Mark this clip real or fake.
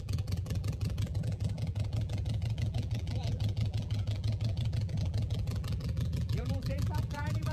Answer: fake